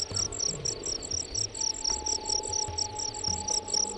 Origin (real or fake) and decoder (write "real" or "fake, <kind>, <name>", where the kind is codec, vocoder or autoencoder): real